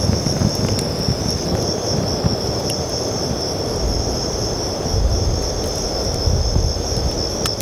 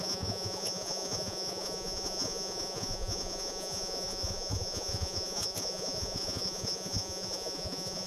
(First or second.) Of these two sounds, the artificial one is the second